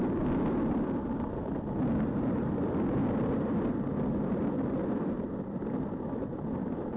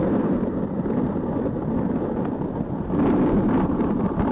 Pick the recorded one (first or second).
first